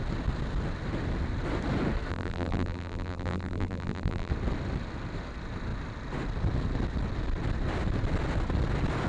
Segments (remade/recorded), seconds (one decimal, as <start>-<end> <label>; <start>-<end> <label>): 0.0-2.1 recorded; 2.1-4.3 remade; 4.3-9.1 recorded